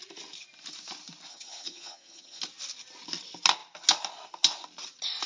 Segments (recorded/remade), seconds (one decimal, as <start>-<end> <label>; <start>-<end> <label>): 0.0-1.3 recorded; 1.3-2.4 remade; 2.4-5.3 recorded

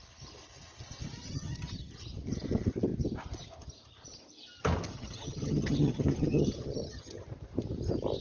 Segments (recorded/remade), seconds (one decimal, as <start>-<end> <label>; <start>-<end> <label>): 0.0-1.2 recorded; 1.2-1.9 remade; 1.9-4.9 recorded; 4.9-7.2 remade; 7.2-8.2 recorded

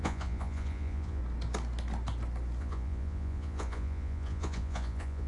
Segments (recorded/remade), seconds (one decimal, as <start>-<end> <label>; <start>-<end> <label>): 0.0-1.2 remade; 1.2-2.6 recorded; 2.6-5.3 remade

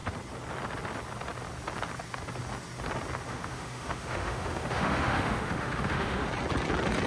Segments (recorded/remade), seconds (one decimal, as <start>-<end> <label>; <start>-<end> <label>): 0.0-3.3 recorded; 3.3-6.3 remade; 6.3-7.1 recorded

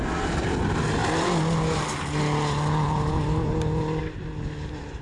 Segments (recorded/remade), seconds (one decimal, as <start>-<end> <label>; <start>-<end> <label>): 0.0-5.0 recorded

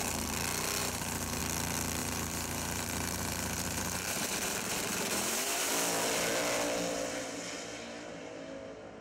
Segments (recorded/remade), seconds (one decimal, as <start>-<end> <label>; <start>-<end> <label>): 0.0-0.8 recorded; 0.8-1.4 remade; 1.4-2.0 recorded; 2.0-5.7 remade; 5.7-9.0 recorded

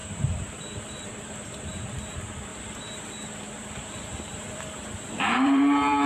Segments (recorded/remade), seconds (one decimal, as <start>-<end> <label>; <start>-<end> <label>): 0.0-2.5 remade; 2.5-3.4 recorded; 3.4-6.1 remade

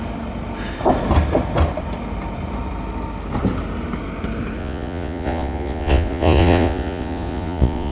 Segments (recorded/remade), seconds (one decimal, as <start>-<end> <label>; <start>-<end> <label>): 0.0-4.6 recorded; 4.6-7.9 remade